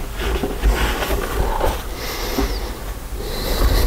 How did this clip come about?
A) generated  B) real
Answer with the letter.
B